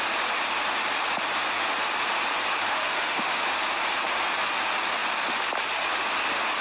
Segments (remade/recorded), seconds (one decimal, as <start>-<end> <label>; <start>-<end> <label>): 0.0-2.7 recorded; 2.7-3.4 remade; 3.4-6.6 recorded